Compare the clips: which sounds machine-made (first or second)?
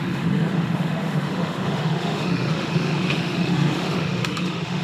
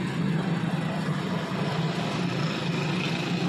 first